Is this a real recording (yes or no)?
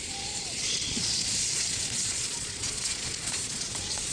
no